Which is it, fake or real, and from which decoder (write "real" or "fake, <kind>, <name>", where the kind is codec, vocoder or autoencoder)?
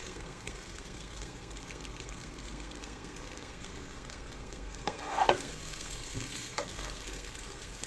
fake, codec, SNAC